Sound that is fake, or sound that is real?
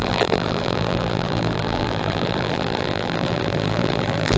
fake